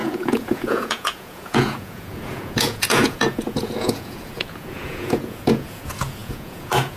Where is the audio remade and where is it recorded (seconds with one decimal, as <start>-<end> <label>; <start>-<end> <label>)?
0.0-7.0 remade